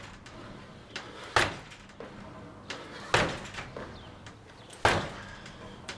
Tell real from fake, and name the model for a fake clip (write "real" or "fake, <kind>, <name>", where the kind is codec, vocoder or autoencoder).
real